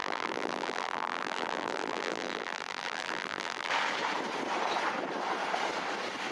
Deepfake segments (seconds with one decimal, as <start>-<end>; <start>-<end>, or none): 0.0-3.7